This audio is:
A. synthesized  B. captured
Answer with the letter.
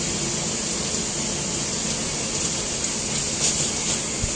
B